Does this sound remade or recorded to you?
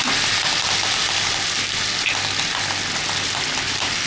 recorded